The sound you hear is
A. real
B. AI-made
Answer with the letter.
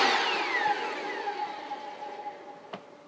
A